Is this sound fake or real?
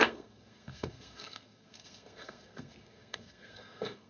fake